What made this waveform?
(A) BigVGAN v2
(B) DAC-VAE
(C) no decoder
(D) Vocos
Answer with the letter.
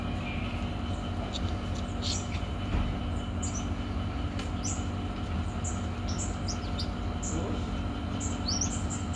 C